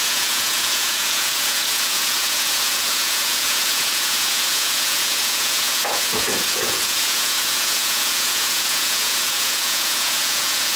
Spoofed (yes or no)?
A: yes